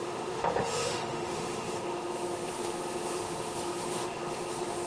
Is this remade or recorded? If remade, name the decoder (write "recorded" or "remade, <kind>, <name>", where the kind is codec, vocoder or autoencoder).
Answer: remade, autoencoder, DAC-VAE